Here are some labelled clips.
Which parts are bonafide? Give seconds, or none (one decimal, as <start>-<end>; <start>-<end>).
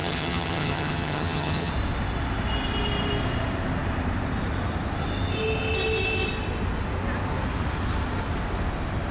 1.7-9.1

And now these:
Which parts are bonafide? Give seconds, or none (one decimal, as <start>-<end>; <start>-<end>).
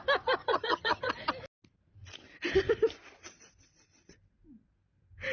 0.0-0.4; 1.1-5.3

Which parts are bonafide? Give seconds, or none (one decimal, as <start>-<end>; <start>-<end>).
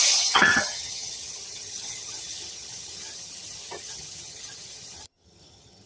none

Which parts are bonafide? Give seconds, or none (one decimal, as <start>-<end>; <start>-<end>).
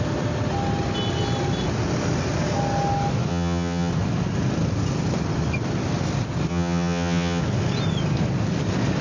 0.0-3.3; 3.9-6.5; 7.4-9.0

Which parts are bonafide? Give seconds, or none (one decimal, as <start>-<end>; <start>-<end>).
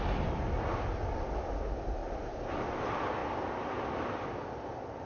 0.0-5.1